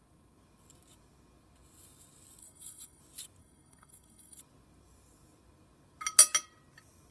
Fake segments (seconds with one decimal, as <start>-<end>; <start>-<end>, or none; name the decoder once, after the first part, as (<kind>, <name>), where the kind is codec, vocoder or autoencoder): 2.4-3.0 (codec, SNAC); 3.4-4.4